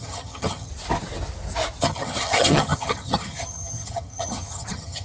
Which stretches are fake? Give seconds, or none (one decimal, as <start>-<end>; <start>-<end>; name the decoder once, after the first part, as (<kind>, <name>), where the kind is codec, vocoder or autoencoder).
0.0-0.7 (vocoder, HiFi-GAN); 1.8-5.0